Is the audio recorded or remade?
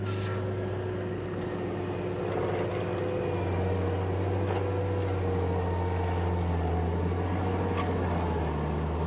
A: recorded